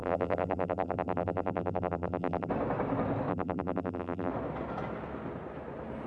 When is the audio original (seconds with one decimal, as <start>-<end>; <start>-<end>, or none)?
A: 2.5-3.3; 4.3-6.1